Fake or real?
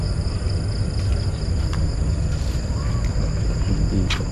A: real